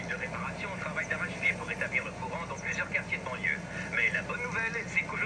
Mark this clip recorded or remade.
recorded